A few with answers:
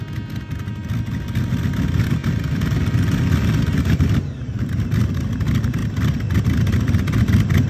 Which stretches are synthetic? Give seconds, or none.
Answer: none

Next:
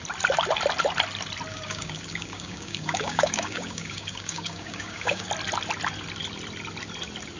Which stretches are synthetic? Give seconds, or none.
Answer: 1.5-5.3 (codec, DAC)

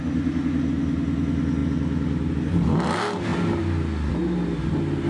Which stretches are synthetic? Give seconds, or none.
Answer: none

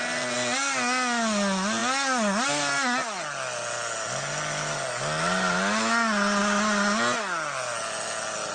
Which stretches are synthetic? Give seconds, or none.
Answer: none

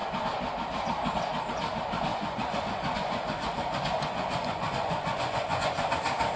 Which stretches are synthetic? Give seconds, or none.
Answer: 2.1-5.9 (vocoder, Vocos)

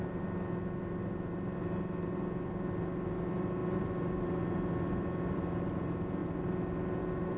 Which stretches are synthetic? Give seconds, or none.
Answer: 3.6-5.4 (vocoder, BigVGAN v2)

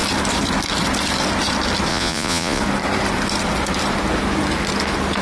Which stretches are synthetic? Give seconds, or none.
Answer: 1.9-2.6 (vocoder, Vocos)

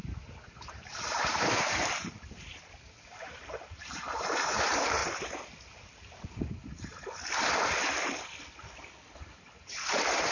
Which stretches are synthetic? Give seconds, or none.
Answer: 0.7-2.5 (vocoder, BigVGAN v2); 3.1-5.0; 9.2-10.3